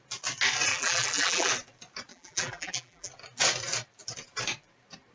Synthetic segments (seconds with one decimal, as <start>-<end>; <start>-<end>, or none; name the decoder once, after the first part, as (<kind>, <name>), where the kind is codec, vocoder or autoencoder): 0.7-1.5 (vocoder, BigVGAN v2); 2.1-3.1